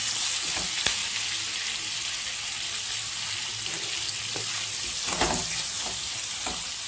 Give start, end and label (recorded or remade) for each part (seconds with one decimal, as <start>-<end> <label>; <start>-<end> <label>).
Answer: 0.0-6.9 recorded